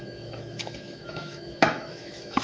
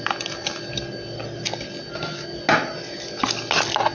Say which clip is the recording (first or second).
second